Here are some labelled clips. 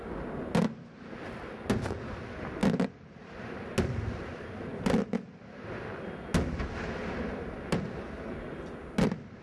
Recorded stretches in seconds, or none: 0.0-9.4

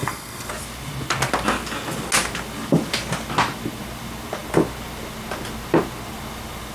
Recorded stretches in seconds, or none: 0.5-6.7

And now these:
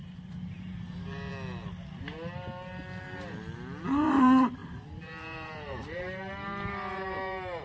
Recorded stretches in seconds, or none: 1.3-4.1

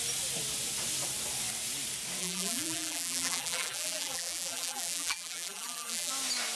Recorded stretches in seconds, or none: 0.0-2.2; 6.1-6.6